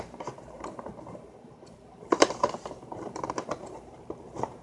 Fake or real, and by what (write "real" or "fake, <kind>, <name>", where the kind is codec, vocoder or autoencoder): fake, vocoder, BigVGAN v2